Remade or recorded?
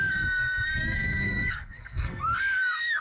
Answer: remade